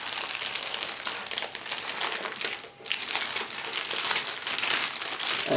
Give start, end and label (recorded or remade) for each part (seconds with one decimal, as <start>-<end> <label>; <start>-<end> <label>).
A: 0.0-5.6 recorded